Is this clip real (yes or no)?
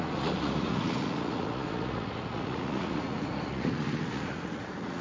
no